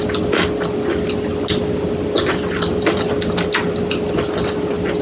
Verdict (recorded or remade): recorded